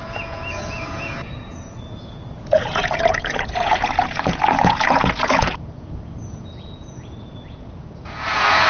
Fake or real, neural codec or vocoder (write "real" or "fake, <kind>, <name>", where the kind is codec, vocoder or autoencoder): fake, vocoder, Vocos